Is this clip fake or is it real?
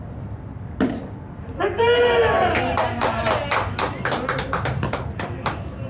real